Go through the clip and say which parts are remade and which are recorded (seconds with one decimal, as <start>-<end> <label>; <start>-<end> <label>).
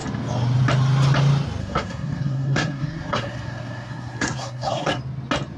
0.0-1.6 recorded; 1.6-5.0 remade; 5.0-5.6 recorded